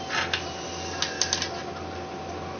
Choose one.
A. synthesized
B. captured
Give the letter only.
B